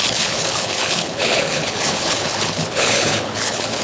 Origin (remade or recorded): remade